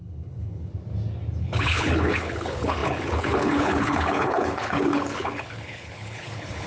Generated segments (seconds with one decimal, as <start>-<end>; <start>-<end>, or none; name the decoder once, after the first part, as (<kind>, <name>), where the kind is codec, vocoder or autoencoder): 0.0-0.7 (codec, HILCodec); 1.4-6.7

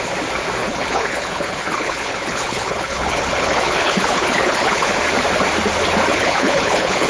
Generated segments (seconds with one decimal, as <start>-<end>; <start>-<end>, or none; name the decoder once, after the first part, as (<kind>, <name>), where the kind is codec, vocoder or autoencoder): 0.6-4.9 (codec, HILCodec); 6.1-7.1

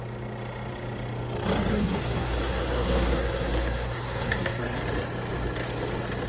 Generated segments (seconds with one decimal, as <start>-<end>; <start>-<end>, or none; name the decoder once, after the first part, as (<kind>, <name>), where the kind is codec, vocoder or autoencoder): 1.7-4.8 (codec, SNAC)

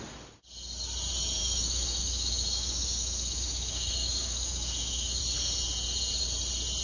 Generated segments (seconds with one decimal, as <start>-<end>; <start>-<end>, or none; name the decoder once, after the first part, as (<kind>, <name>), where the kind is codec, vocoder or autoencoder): 1.4-5.2 (autoencoder, DAC-VAE)